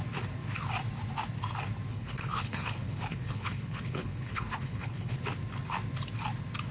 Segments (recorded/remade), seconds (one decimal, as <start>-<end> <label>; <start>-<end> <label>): 0.0-1.9 recorded; 1.9-5.2 remade; 5.2-6.7 recorded